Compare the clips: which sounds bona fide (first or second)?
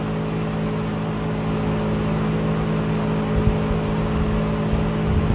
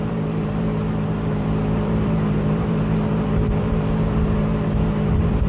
first